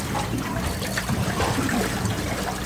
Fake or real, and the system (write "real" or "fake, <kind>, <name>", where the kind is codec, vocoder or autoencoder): fake, vocoder, BigVGAN v2